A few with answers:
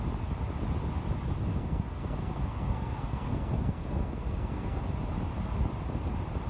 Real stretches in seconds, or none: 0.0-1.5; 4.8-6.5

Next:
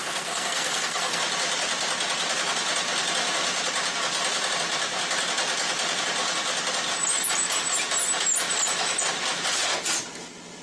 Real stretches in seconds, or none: 1.2-10.6

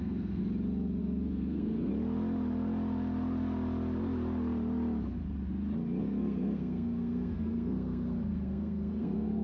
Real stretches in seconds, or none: 0.4-1.0; 1.9-6.0

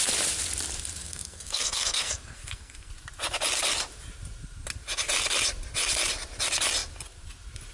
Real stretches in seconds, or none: 0.0-1.0; 2.9-7.7

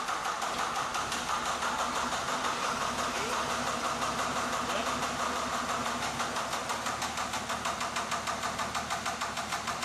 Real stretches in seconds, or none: 0.0-9.8